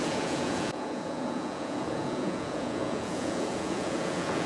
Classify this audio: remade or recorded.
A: remade